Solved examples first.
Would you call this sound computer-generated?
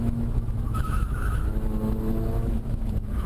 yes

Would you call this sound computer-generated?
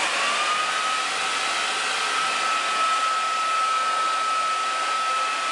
no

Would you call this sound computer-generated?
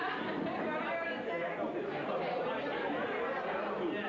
no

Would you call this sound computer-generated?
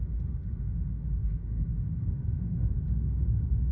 yes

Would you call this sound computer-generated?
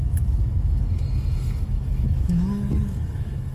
yes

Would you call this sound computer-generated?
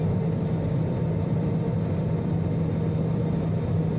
no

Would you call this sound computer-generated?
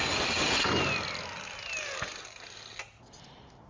no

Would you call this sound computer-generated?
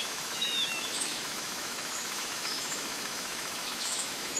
yes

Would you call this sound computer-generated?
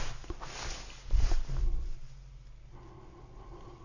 no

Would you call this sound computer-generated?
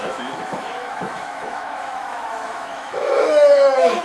yes